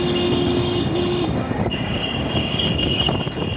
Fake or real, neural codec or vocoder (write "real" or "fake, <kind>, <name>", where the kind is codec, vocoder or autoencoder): fake, codec, DAC